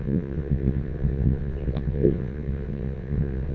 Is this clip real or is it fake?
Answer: fake